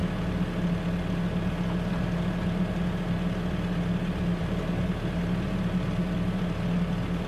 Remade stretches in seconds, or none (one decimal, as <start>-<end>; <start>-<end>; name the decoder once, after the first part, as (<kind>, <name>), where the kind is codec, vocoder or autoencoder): none